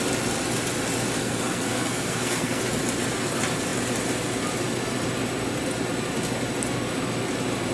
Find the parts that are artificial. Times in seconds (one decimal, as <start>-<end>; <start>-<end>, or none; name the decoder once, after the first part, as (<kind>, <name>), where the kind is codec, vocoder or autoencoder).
1.2-2.6 (codec, SNAC)